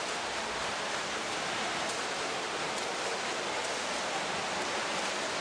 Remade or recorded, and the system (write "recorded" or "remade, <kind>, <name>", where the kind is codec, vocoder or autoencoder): recorded